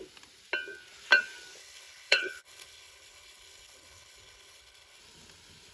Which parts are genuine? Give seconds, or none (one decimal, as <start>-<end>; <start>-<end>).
0.0-1.6; 5.0-5.7